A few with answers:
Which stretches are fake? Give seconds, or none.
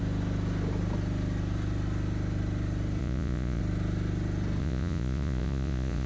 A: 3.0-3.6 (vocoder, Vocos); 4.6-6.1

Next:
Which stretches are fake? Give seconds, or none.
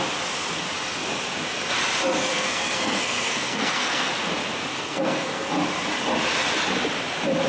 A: 2.3-4.1 (codec, SNAC); 4.7-5.5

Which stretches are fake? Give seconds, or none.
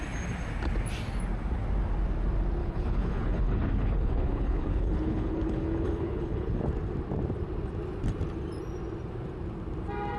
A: 2.6-6.6 (codec, HILCodec)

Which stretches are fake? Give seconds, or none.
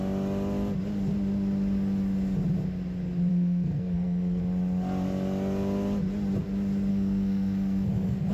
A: 3.3-4.4 (codec, SNAC); 6.9-8.3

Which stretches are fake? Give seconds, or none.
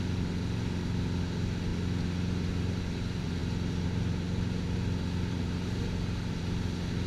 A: none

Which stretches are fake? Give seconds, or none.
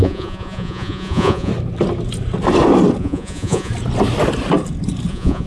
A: 0.0-1.5 (vocoder, Vocos); 3.0-3.7; 5.1-5.5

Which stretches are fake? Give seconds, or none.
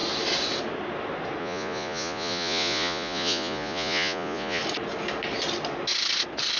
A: 1.4-4.6 (vocoder, Vocos)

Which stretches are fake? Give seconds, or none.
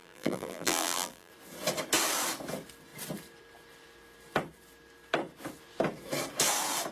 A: 0.0-1.3 (vocoder, BigVGAN v2)